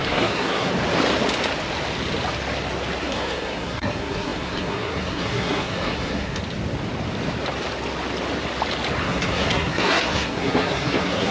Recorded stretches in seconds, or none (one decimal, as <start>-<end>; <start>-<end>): 0.7-3.0; 6.4-9.0